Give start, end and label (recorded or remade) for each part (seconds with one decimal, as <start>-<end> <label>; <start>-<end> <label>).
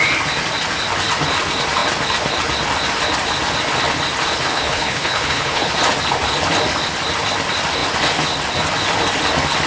0.0-4.5 recorded; 4.5-5.7 remade; 5.7-9.7 recorded